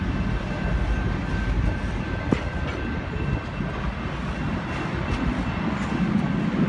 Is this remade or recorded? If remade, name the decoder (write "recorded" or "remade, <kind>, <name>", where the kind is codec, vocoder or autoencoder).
recorded